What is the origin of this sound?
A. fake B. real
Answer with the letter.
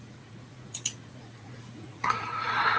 A